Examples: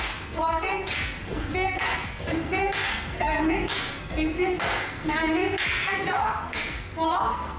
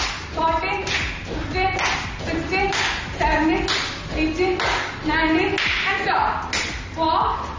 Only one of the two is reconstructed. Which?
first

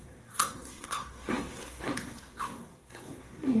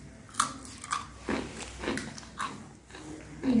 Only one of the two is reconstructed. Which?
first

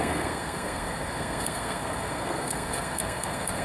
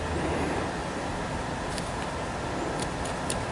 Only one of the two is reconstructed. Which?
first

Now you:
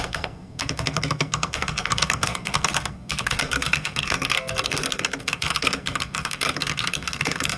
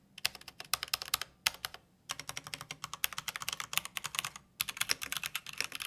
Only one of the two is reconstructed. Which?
first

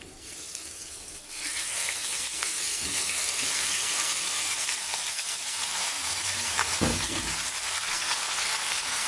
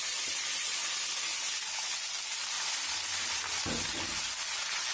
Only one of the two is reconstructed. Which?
first